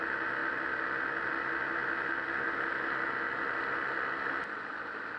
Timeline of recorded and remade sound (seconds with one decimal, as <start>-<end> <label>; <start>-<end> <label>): 0.0-5.2 recorded